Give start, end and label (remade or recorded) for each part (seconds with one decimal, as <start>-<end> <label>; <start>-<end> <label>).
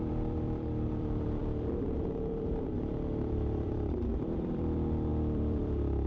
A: 0.0-6.1 remade